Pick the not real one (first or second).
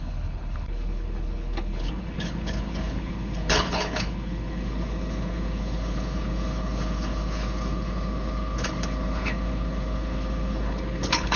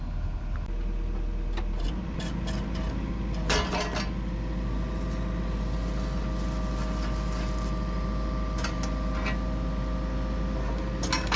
first